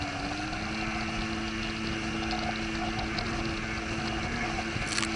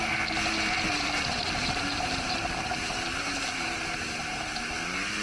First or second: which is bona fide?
first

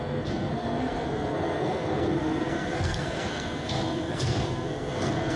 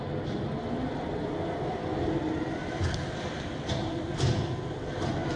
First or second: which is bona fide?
second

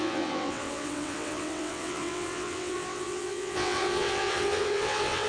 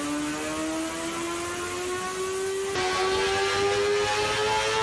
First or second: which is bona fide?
second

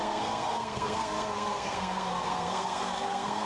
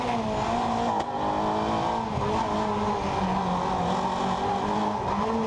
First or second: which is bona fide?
second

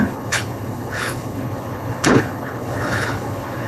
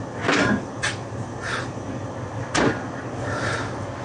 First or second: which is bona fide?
second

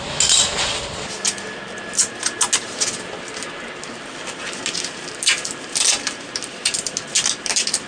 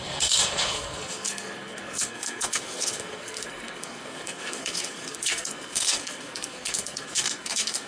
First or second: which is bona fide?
first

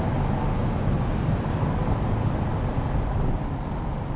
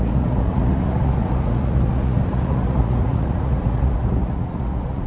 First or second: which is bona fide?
first